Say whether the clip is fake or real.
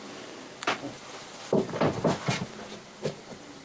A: real